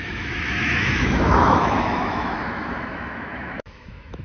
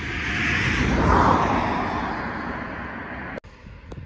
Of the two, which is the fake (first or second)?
first